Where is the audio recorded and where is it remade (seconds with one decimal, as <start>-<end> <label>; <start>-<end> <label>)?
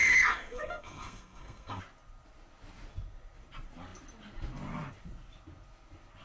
0.0-1.8 remade; 1.8-6.2 recorded